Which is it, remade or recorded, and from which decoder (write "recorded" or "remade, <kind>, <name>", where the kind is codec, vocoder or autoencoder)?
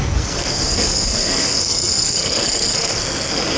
remade, codec, SNAC